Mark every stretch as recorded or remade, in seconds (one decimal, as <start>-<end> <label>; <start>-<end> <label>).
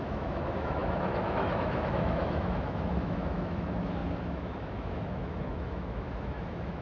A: 0.0-6.8 remade